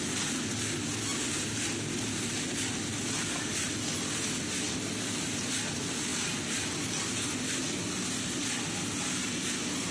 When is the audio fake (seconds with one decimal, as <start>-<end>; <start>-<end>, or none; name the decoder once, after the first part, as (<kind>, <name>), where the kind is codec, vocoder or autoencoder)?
6.1-7.3 (vocoder, BigVGAN v2)